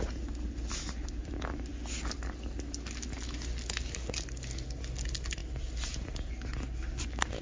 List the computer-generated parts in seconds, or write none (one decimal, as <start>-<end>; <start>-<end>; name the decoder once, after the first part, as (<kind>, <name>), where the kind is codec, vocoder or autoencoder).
none